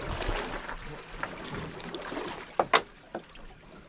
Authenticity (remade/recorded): recorded